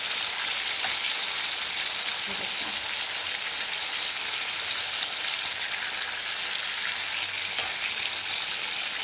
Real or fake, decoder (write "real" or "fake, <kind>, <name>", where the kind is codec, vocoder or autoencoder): real